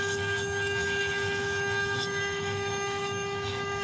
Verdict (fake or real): fake